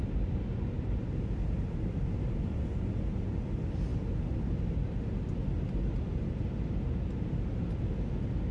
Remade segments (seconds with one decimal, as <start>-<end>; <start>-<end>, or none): none